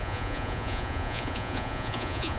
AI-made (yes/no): yes